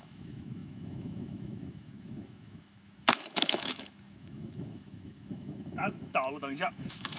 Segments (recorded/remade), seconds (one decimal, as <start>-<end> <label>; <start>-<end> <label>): 0.0-7.2 remade